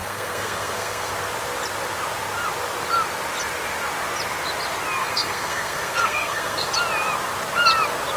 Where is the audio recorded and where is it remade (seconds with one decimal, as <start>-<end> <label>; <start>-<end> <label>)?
0.0-1.1 remade; 1.1-5.0 recorded; 5.0-6.7 remade; 6.7-8.2 recorded